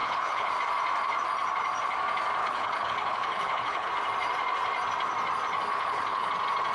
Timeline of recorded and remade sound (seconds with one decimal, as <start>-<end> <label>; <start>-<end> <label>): 0.0-0.5 remade; 0.5-2.4 recorded; 2.4-3.9 remade; 3.9-5.7 recorded; 5.7-6.3 remade; 6.3-6.7 recorded